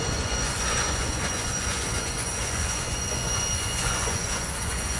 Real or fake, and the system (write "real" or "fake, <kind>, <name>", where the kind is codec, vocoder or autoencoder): fake, vocoder, Vocos